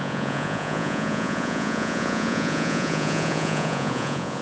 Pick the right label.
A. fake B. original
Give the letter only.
A